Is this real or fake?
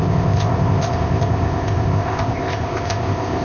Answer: fake